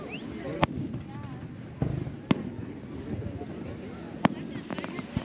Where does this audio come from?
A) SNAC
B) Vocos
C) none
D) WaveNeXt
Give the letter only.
C